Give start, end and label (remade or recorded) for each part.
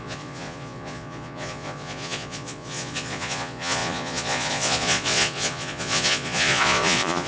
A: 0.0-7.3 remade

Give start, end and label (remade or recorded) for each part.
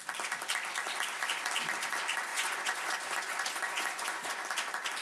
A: 0.0-2.3 recorded; 2.3-4.3 remade; 4.3-5.0 recorded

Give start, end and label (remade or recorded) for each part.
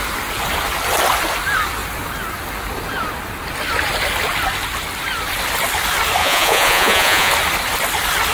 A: 0.0-6.2 recorded; 6.2-7.3 remade; 7.3-8.3 recorded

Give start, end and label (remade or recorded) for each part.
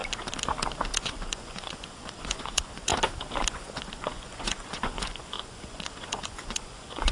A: 0.0-1.0 recorded; 1.0-2.9 remade; 2.9-3.5 recorded; 3.5-7.1 remade